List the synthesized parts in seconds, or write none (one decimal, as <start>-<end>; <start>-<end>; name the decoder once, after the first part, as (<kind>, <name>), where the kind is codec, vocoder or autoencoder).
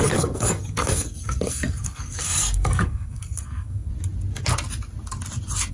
0.0-3.9 (codec, SNAC)